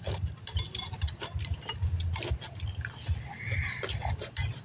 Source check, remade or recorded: recorded